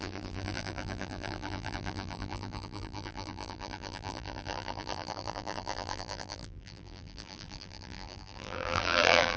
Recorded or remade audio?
remade